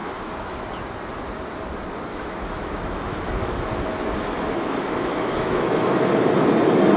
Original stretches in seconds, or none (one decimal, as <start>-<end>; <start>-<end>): 0.6-2.1; 6.3-7.0